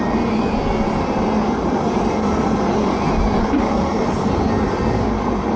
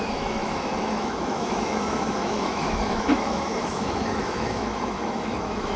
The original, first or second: first